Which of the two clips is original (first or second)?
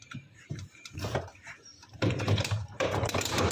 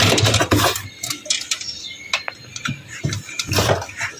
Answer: second